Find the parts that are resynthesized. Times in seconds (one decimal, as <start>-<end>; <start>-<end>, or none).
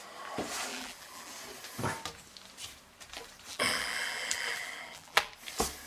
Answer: 0.7-1.3; 3.5-5.3